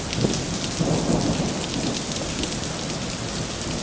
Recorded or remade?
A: recorded